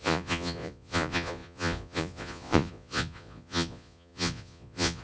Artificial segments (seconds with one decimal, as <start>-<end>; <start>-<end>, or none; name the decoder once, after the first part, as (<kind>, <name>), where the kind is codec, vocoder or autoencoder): 0.0-5.0 (vocoder, Vocos)